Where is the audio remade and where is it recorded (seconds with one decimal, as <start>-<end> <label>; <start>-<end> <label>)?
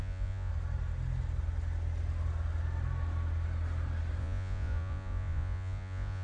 0.0-0.5 remade; 0.5-4.2 recorded; 4.2-6.2 remade